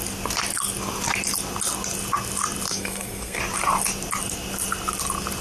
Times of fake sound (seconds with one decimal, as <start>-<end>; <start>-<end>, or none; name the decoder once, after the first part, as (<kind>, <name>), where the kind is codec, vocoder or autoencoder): 2.7-3.4 (codec, SNAC)